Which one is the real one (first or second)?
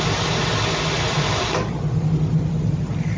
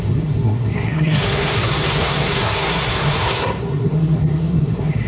first